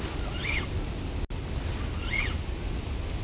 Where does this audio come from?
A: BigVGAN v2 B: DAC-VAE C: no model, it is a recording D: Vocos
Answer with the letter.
C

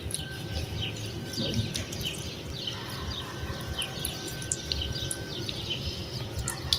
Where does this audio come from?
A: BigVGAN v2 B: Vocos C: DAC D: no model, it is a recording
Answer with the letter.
D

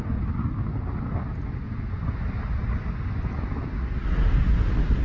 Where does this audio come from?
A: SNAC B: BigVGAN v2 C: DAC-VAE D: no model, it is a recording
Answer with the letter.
D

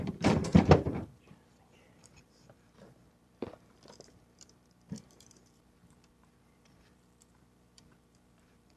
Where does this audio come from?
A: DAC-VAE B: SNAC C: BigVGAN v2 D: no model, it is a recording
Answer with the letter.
C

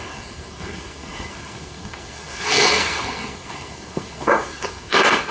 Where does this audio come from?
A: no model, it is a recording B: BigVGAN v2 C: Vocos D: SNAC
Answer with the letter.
D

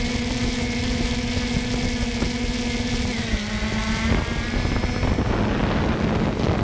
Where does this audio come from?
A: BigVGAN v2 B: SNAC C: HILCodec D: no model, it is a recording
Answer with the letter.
D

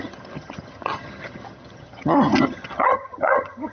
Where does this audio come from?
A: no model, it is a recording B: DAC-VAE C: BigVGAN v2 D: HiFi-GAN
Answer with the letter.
D